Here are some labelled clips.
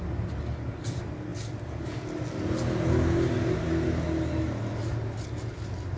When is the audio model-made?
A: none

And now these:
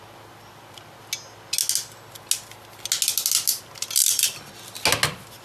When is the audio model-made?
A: 4.0-4.5

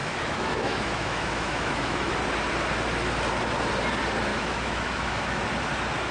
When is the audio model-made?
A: 0.0-2.1; 4.3-5.4